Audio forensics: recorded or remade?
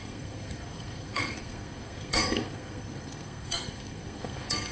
remade